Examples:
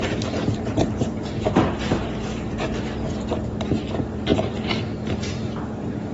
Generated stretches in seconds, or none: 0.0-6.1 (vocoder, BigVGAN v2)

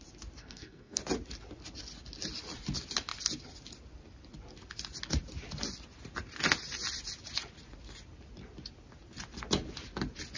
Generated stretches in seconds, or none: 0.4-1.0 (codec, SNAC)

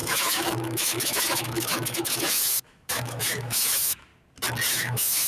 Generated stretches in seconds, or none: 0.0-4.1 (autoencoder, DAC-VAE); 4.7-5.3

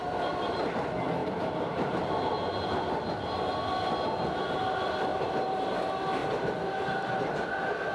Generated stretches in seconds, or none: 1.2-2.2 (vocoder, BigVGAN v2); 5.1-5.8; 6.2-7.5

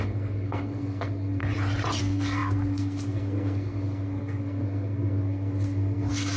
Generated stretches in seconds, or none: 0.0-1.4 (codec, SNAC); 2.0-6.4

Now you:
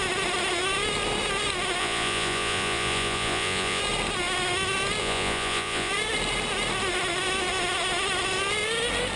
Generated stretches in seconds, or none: 1.8-3.8 (vocoder, Vocos); 5.0-5.9